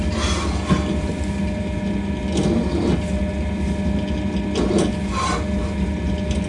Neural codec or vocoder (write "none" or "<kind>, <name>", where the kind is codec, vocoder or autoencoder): none